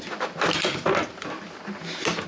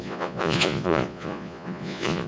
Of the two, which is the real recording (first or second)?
first